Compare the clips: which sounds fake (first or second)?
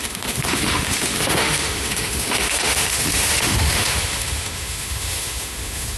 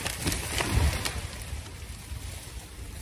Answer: first